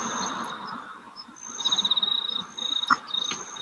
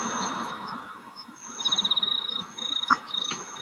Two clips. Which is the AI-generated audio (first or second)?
second